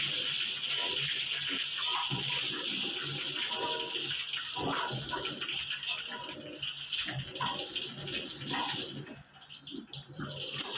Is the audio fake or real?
real